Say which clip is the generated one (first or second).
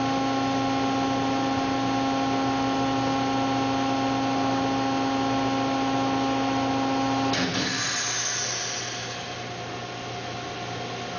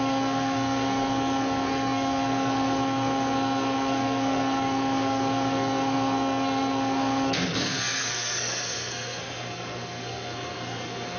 second